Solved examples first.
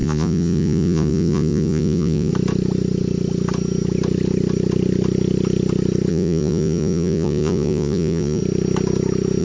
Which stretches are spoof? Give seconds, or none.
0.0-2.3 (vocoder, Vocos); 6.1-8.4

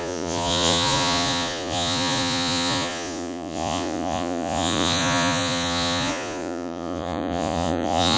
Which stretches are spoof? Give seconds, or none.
0.0-8.2 (vocoder, Vocos)

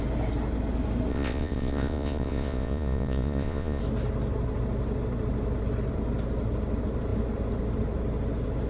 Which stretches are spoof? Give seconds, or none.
1.1-3.8 (vocoder, Vocos)

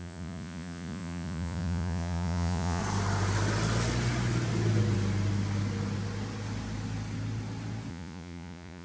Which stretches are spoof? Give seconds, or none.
0.0-2.8 (vocoder, Vocos); 7.9-8.8

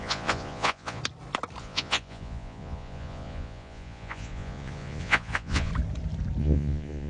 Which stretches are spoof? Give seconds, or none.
0.0-1.0 (vocoder, Vocos); 1.6-5.7; 6.4-7.1